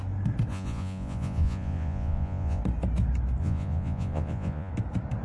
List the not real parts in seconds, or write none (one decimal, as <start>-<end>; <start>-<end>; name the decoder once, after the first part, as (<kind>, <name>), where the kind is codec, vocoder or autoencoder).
0.5-2.6 (vocoder, Vocos); 3.4-4.7